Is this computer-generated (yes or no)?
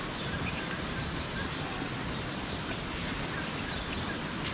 yes